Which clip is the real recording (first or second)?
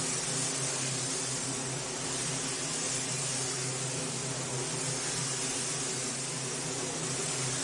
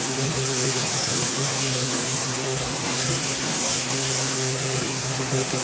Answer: first